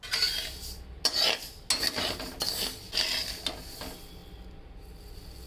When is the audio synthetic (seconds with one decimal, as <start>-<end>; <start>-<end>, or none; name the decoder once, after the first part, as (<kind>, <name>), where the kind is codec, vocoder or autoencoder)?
none